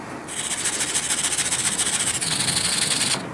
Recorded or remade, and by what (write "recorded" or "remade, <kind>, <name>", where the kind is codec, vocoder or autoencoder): recorded